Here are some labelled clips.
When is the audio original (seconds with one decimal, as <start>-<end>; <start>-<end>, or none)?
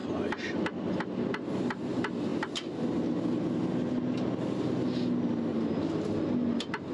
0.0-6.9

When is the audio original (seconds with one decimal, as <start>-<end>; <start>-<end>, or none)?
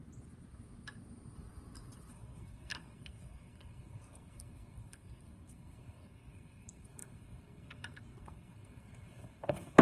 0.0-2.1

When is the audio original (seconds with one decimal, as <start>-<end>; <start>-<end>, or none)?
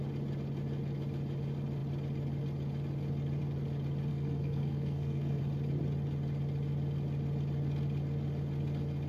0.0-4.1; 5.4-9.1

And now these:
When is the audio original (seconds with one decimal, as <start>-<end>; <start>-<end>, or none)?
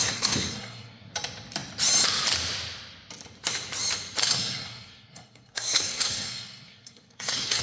1.1-4.2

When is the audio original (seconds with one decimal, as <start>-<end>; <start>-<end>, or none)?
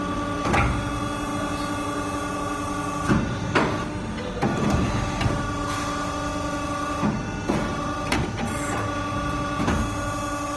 0.0-10.6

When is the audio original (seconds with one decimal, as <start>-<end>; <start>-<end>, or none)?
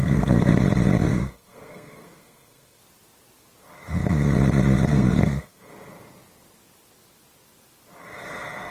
0.6-1.0; 2.8-4.9; 5.7-8.7